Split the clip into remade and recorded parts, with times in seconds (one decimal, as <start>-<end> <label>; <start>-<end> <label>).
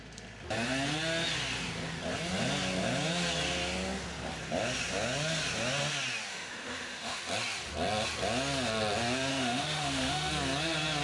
0.0-6.3 recorded; 6.3-7.2 remade; 7.2-9.3 recorded; 9.3-10.3 remade; 10.3-11.0 recorded